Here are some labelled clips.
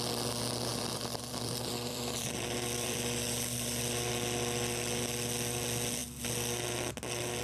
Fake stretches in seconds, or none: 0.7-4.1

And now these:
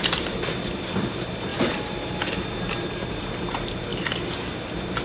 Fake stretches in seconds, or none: 0.0-5.0

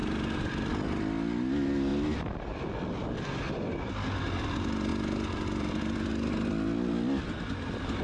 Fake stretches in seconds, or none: none